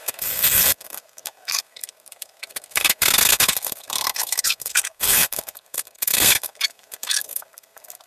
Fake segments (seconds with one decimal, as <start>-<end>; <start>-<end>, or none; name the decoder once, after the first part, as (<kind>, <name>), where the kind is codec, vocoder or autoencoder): 0.0-8.1 (codec, SNAC)